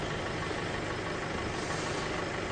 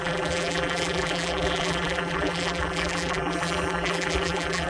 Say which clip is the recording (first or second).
first